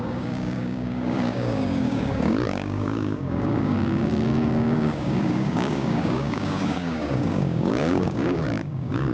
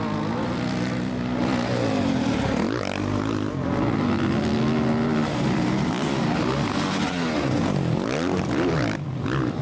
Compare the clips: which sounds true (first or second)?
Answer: second